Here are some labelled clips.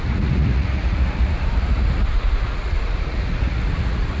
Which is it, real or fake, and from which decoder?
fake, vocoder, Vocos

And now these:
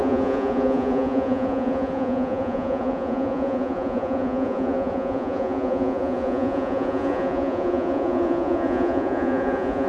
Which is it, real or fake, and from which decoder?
fake, vocoder, Vocos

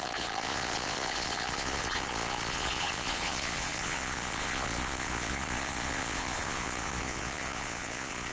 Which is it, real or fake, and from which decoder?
fake, vocoder, Vocos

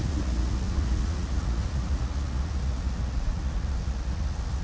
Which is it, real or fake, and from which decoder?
fake, vocoder, Vocos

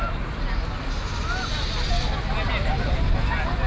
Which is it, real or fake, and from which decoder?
real